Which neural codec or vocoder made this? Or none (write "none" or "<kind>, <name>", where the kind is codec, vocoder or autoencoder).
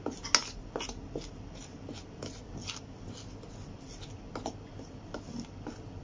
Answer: none